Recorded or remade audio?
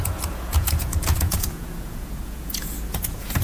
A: remade